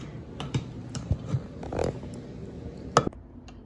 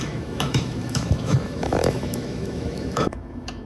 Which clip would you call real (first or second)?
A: first